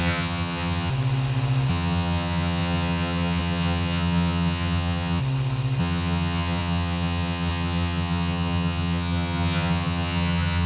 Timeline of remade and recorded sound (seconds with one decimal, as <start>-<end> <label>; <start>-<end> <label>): 0.0-0.9 remade; 0.9-1.7 recorded; 1.7-5.2 remade; 5.2-5.8 recorded; 5.8-10.7 remade